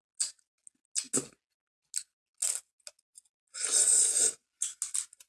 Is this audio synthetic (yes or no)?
no